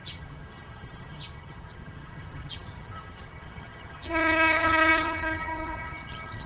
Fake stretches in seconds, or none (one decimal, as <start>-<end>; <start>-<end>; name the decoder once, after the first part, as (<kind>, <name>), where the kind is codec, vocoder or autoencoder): 0.0-6.5 (vocoder, HiFi-GAN)